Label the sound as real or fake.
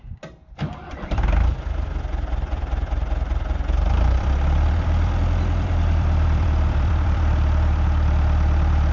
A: fake